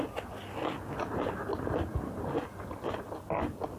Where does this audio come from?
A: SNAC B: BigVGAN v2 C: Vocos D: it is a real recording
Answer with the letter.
D